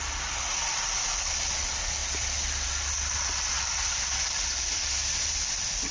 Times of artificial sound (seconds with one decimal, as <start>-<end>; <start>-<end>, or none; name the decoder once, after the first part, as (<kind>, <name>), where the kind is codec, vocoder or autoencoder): none